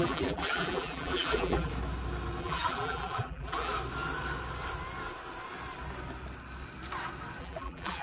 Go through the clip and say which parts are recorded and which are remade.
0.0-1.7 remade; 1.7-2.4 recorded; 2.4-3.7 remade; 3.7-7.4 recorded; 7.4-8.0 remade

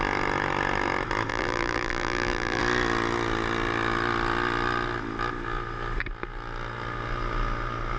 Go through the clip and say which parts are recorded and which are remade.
0.0-1.3 recorded; 1.3-2.6 remade; 2.6-8.0 recorded

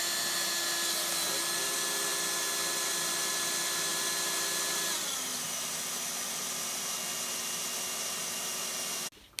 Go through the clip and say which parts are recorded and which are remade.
0.0-9.4 recorded

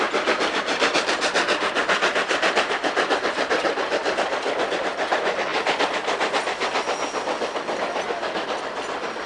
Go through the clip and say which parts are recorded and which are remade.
0.0-4.0 remade; 4.0-4.6 recorded; 4.6-5.5 remade; 5.5-9.3 recorded

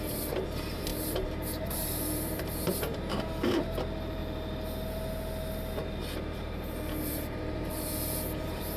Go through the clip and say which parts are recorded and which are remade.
0.0-4.2 remade; 4.2-6.3 recorded; 6.3-8.8 remade

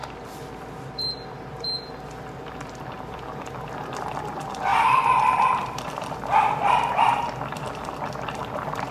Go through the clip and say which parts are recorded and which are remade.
0.0-8.9 remade